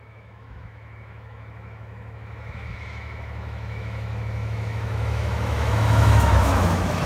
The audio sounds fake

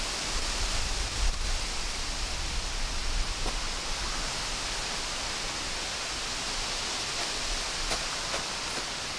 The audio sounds real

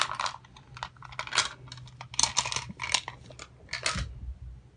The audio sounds real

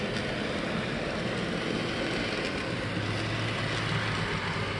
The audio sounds real